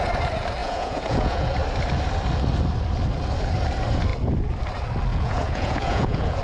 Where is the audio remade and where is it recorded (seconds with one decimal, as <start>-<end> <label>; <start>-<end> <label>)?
0.0-0.6 recorded; 0.6-1.5 remade; 1.5-5.1 recorded; 5.1-6.4 remade